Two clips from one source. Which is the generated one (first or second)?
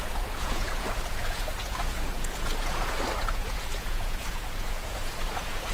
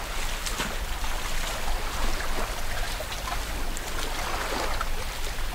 first